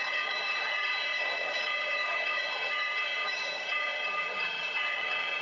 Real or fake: fake